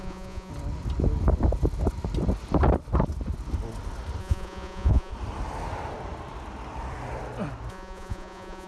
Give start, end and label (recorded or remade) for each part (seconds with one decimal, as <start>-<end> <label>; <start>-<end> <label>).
0.0-0.5 remade; 0.5-4.2 recorded; 4.2-5.1 remade; 5.1-7.7 recorded; 7.7-8.7 remade